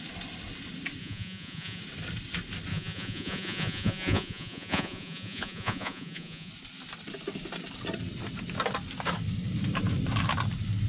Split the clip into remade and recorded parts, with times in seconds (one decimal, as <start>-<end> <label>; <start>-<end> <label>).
0.0-1.0 recorded; 1.0-1.8 remade; 1.8-2.7 recorded; 2.7-6.5 remade; 6.5-10.9 recorded